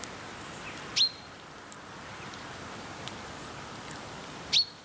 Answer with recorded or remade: recorded